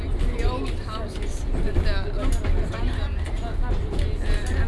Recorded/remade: recorded